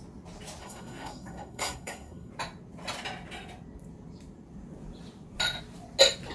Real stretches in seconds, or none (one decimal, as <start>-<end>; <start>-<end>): 0.0-0.6; 2.3-6.3